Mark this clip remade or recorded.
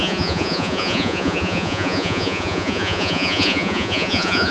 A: remade